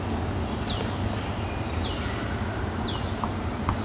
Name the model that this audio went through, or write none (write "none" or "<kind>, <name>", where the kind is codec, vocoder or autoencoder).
none